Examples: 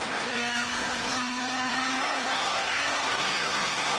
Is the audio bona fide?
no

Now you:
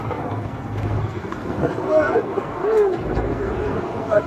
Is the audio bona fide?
no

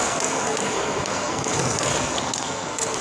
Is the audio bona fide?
no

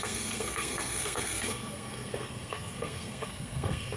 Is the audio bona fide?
no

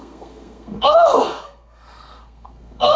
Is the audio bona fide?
no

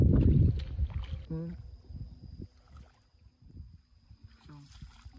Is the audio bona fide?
yes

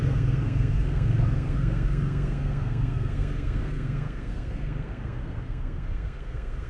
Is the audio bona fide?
no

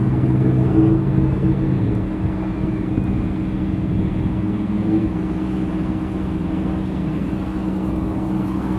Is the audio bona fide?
no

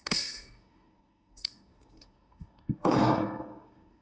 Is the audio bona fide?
no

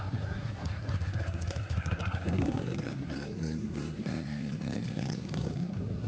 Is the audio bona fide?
no